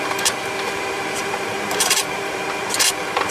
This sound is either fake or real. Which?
fake